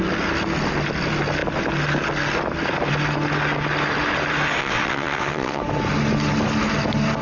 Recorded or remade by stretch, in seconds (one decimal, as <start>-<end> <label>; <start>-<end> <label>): 0.0-4.6 recorded; 4.6-5.6 remade; 5.6-7.2 recorded